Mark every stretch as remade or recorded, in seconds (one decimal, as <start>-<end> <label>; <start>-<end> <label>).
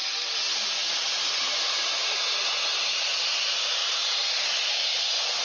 0.0-5.4 recorded